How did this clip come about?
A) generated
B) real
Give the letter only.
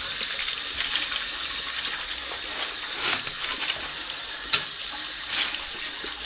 B